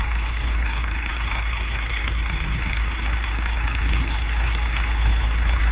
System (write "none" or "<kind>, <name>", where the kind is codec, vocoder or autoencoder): codec, SNAC